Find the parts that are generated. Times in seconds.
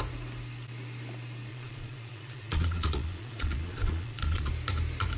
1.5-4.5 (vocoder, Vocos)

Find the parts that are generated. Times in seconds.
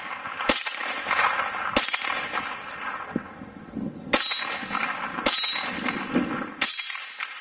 none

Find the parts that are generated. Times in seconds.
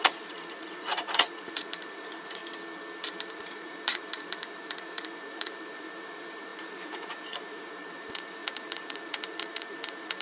0.0-2.4 (vocoder, Vocos); 3.3-10.2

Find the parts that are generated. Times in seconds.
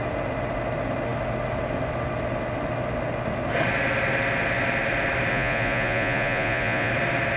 5.3-6.9 (vocoder, Vocos)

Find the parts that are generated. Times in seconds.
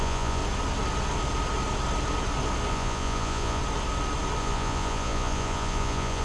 0.0-0.4 (vocoder, Vocos); 2.7-3.6; 4.4-6.2